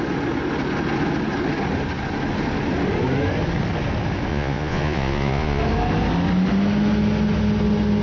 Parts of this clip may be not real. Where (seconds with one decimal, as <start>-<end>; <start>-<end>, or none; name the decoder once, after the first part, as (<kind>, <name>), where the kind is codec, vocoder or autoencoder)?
4.3-5.6 (vocoder, Vocos)